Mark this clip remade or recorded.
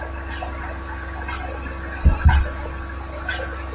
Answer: recorded